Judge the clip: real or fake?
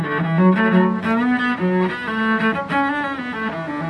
real